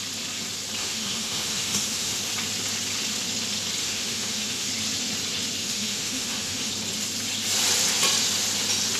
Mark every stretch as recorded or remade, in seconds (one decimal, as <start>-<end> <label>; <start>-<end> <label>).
0.0-0.8 recorded; 0.8-2.2 remade; 2.2-3.8 recorded; 3.8-4.7 remade; 4.7-5.6 recorded; 5.6-6.7 remade; 6.7-9.0 recorded